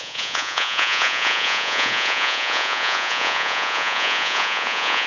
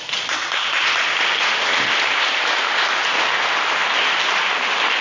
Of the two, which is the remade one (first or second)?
first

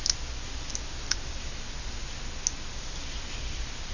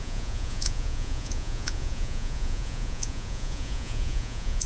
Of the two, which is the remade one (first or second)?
second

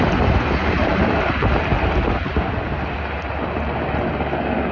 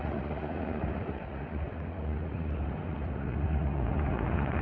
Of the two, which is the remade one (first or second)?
second